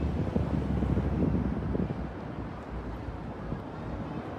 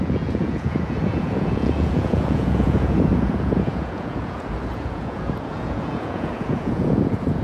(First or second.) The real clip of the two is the first